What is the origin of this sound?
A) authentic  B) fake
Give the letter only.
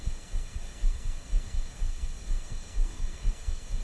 B